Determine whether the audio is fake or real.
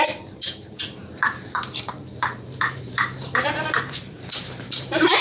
fake